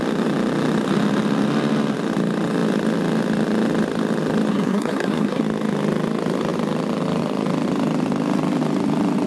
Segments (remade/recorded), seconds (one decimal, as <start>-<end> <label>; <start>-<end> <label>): 0.0-4.5 recorded; 4.5-5.4 remade; 5.4-9.3 recorded